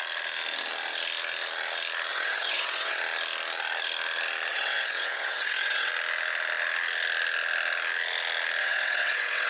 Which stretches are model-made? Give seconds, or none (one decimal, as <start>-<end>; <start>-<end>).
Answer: 2.1-3.0; 4.5-5.9; 8.6-9.5